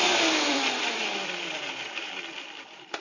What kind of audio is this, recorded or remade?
remade